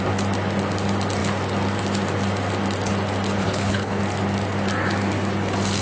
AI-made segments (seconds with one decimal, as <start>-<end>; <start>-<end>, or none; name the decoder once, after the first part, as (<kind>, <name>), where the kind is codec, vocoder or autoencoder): 3.4-4.0 (codec, HILCodec)